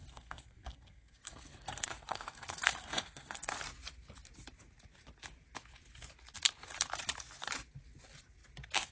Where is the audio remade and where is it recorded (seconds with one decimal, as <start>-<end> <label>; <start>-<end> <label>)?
0.0-3.5 remade; 3.5-8.9 recorded